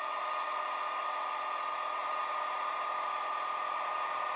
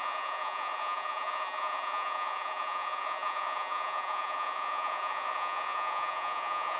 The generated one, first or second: second